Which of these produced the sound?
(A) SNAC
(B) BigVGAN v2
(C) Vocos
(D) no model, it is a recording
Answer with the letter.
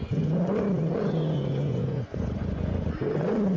C